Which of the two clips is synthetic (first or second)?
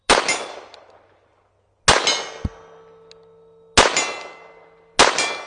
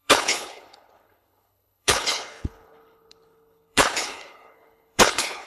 second